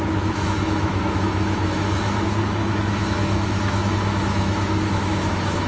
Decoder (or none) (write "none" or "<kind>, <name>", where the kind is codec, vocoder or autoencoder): autoencoder, DAC-VAE